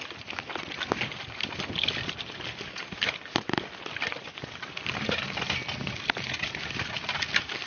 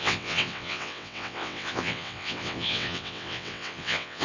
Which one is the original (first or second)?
first